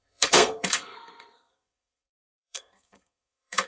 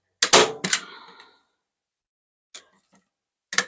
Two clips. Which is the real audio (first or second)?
second